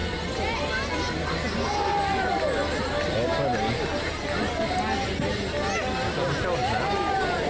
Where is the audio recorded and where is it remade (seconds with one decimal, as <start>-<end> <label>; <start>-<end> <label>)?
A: 0.0-7.5 recorded